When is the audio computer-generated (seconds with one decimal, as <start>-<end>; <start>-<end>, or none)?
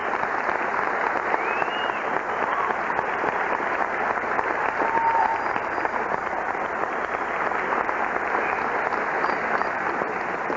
none